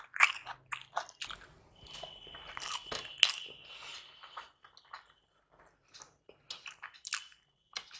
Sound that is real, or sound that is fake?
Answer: real